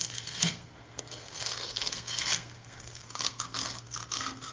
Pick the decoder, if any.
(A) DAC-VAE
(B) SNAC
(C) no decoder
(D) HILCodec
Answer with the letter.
B